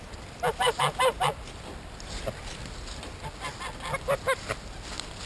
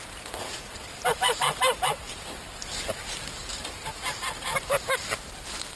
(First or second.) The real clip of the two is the first